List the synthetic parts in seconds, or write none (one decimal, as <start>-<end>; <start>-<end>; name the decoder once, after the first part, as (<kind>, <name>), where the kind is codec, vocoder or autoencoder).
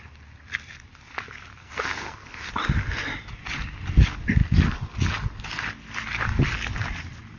1.6-2.5 (codec, SNAC)